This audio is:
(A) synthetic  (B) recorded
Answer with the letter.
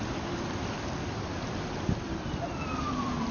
A